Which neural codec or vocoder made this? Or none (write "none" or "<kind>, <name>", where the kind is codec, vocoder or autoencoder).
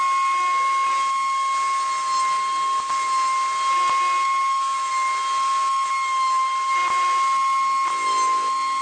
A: none